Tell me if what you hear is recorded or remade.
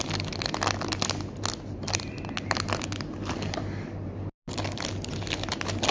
recorded